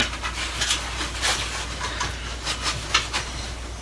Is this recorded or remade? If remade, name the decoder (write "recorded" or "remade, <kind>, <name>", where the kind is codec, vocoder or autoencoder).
recorded